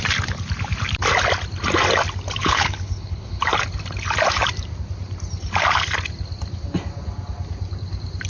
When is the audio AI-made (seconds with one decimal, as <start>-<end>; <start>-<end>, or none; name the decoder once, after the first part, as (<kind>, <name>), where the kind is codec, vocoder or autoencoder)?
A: 2.4-3.4 (codec, HILCodec)